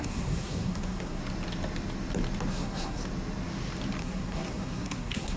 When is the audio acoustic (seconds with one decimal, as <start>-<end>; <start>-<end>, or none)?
1.2-2.5; 3.0-4.0